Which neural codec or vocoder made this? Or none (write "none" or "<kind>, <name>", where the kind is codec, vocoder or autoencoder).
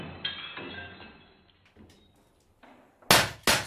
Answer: none